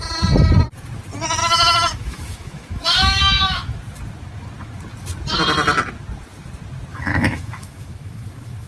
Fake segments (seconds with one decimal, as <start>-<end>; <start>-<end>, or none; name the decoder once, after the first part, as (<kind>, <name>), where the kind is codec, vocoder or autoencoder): 1.4-3.8 (autoencoder, DAC-VAE); 6.9-8.7